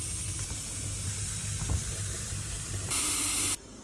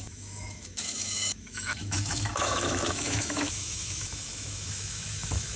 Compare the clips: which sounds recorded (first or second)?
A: first